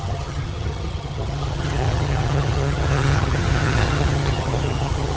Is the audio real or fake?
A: fake